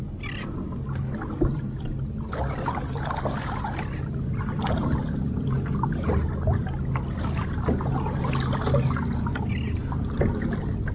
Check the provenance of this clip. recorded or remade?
recorded